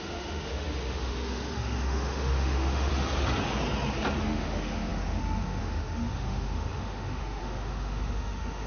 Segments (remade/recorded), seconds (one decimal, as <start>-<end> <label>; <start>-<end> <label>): 0.0-2.9 remade; 2.9-4.2 recorded; 4.2-8.7 remade